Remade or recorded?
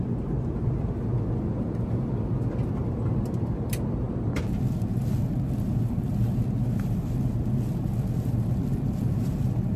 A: recorded